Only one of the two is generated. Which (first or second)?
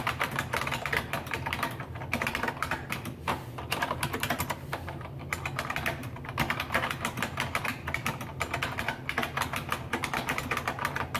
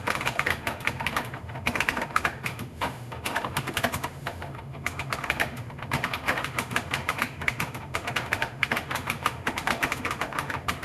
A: second